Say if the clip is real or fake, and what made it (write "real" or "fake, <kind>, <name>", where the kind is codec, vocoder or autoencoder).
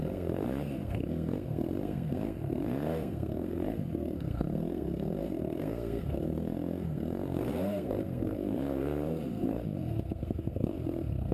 fake, codec, SNAC